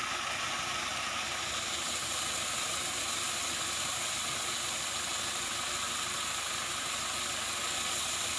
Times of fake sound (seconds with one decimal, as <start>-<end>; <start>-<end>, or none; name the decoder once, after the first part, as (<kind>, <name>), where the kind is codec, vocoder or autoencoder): none